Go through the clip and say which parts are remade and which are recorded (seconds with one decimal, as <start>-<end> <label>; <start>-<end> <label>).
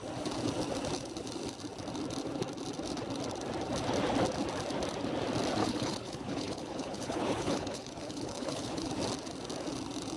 0.0-5.6 recorded; 5.6-8.9 remade; 8.9-10.2 recorded